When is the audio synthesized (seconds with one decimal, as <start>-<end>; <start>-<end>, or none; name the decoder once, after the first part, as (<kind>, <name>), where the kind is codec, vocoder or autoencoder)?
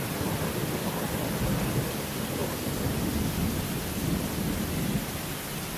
none